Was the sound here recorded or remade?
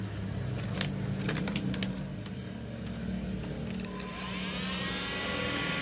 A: recorded